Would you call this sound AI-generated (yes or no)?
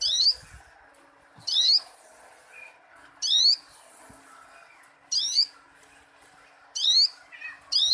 no